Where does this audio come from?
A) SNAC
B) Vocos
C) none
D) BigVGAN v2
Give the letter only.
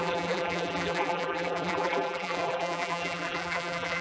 D